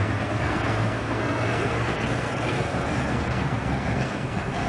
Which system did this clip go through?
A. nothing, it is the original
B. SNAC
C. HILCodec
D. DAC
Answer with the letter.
B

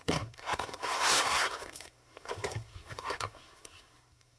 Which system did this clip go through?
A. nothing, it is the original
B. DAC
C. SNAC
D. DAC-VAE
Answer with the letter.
C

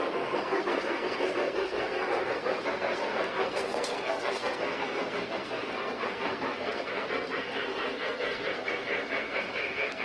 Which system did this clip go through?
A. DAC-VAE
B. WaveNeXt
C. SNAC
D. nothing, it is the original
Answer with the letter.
C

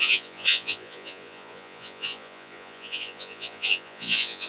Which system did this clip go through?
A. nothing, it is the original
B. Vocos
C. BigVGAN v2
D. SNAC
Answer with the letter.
B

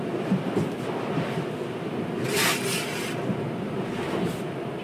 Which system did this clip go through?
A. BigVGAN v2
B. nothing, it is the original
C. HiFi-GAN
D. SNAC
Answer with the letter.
B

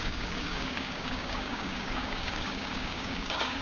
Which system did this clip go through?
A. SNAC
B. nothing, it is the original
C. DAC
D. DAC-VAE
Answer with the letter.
C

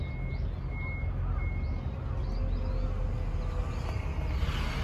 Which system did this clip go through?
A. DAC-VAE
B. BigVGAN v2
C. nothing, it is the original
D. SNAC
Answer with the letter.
C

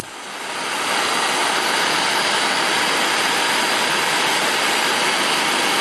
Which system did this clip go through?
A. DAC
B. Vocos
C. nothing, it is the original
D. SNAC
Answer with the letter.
C